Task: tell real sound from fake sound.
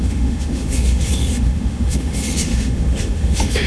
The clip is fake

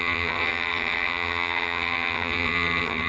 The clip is fake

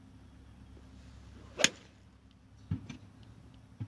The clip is real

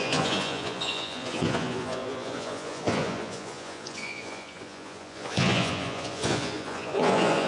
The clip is fake